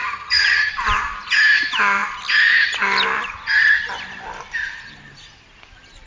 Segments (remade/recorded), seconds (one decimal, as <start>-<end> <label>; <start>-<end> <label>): 0.0-0.7 remade; 0.7-6.1 recorded